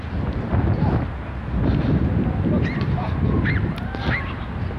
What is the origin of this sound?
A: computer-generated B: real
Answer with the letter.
B